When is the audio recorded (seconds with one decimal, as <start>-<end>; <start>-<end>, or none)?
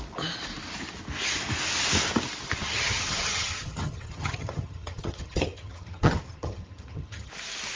0.0-2.6; 7.3-7.8